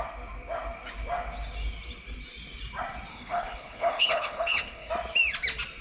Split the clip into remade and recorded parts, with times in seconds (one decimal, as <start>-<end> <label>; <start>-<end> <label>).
0.0-3.1 recorded; 3.1-4.9 remade; 4.9-5.8 recorded